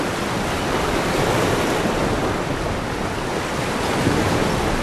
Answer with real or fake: fake